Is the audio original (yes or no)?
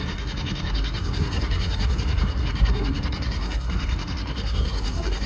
no